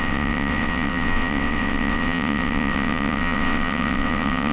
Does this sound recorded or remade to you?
remade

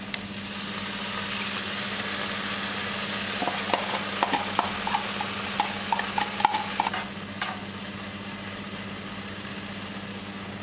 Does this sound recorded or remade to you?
recorded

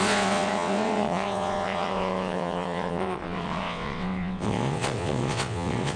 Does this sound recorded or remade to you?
remade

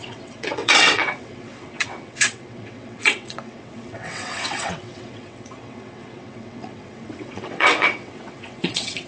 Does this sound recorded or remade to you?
remade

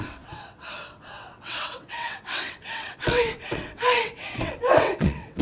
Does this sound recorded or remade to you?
remade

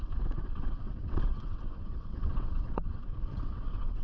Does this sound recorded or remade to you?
remade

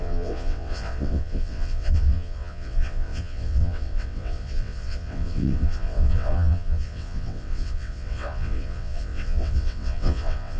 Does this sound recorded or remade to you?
remade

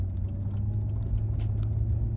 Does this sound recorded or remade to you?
recorded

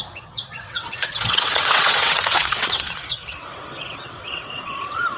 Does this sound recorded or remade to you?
remade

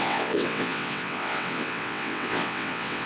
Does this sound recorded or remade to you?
remade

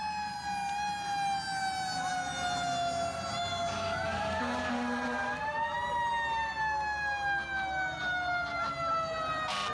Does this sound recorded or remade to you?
recorded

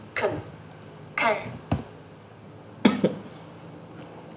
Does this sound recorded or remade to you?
recorded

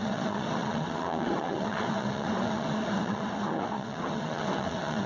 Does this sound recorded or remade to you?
remade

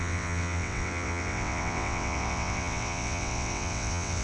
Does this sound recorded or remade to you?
remade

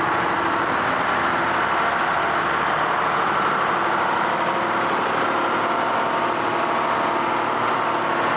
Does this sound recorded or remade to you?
recorded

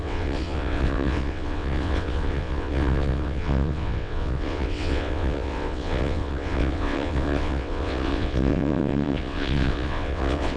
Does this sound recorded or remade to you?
remade